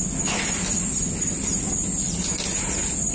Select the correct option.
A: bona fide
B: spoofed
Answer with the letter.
A